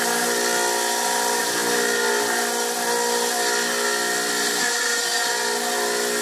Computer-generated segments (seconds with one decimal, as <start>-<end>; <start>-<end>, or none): none